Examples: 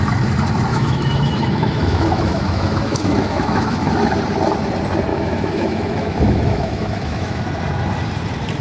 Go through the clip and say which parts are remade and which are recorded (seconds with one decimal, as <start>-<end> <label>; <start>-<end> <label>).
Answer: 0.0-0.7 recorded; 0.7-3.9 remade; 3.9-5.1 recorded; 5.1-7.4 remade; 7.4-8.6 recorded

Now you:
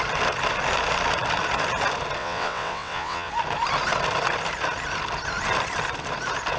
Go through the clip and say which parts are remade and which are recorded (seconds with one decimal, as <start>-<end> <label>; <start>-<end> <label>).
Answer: 0.0-2.2 recorded; 2.2-3.3 remade; 3.3-6.6 recorded

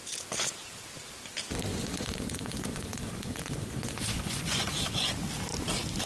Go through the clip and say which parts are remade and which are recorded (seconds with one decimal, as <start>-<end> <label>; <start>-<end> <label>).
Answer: 0.0-1.7 recorded; 1.7-5.1 remade; 5.1-6.1 recorded